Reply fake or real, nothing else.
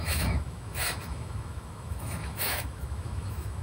fake